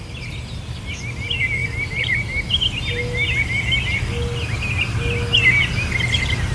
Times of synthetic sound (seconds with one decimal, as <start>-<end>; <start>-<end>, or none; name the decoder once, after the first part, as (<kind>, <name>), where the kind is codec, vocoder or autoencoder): none